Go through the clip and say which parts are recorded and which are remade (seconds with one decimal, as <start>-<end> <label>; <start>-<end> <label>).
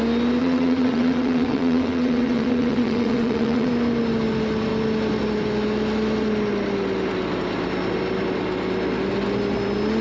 0.0-0.4 recorded; 0.4-3.7 remade; 3.7-10.0 recorded